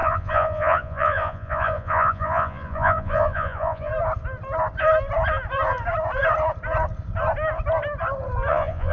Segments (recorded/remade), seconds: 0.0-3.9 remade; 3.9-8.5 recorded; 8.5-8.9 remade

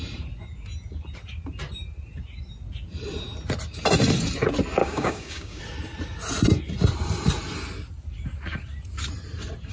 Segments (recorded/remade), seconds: 0.0-4.8 recorded; 4.8-5.6 remade; 5.6-9.7 recorded

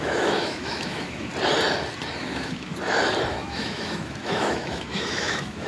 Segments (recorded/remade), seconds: 0.0-1.3 remade; 1.3-2.2 recorded; 2.2-2.7 remade; 2.7-3.3 recorded; 3.3-5.7 remade

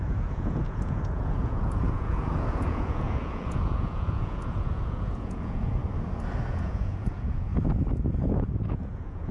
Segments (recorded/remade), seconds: 0.0-5.8 remade; 5.8-6.5 recorded; 6.5-7.5 remade; 7.5-8.1 recorded; 8.1-9.3 remade

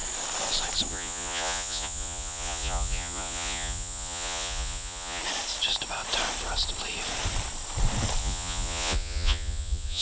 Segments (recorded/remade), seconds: 0.0-0.9 recorded; 0.9-5.2 remade; 5.2-8.2 recorded; 8.2-10.0 remade

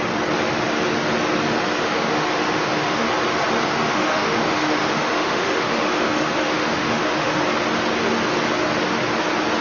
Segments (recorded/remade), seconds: 0.0-1.8 recorded; 1.8-3.1 remade; 3.1-3.6 recorded; 3.6-7.4 remade; 7.4-9.6 recorded

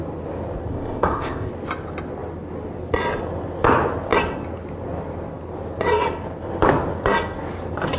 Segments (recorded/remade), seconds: 0.0-0.7 recorded; 0.7-1.5 remade; 1.5-8.0 recorded